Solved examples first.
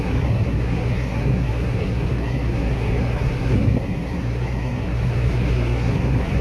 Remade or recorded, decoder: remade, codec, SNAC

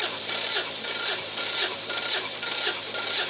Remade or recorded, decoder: remade, vocoder, BigVGAN v2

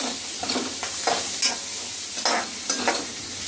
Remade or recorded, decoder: recorded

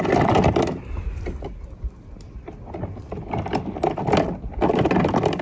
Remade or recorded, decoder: recorded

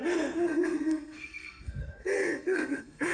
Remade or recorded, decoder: remade, codec, SNAC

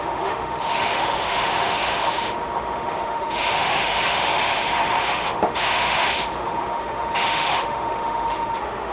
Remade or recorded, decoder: remade, autoencoder, DAC-VAE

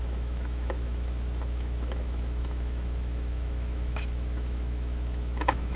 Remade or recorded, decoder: remade, autoencoder, DAC-VAE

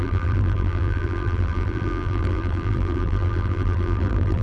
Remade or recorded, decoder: remade, vocoder, BigVGAN v2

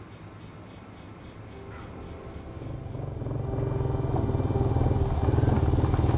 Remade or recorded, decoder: recorded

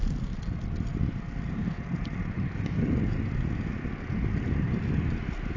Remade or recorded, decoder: recorded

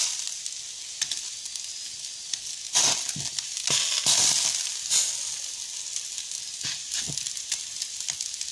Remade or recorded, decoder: recorded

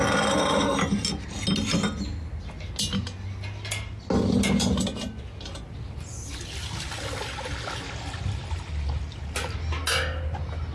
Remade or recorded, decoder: recorded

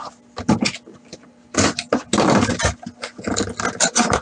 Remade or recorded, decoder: recorded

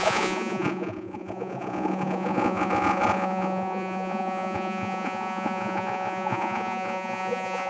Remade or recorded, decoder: remade, vocoder, Vocos